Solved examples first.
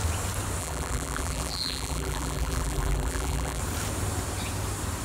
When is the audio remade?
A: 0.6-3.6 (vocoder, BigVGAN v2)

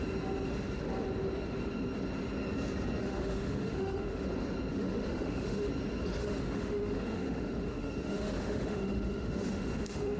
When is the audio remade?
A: 3.0-4.3 (autoencoder, DAC-VAE); 4.7-5.7; 6.2-10.2

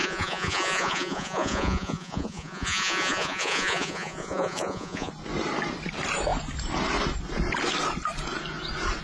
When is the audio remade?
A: 0.0-5.1 (vocoder, Vocos)

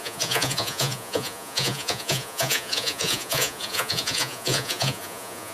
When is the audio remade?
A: 0.0-5.5 (vocoder, Vocos)

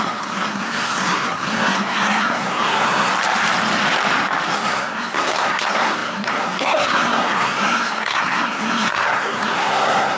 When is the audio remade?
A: 0.0-3.1 (codec, SNAC); 4.5-10.2